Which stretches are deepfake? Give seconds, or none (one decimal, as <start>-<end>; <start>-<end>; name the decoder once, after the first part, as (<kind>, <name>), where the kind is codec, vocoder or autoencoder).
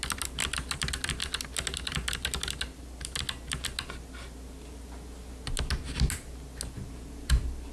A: none